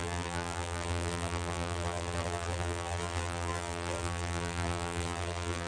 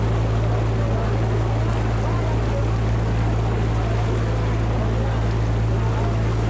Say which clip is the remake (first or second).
first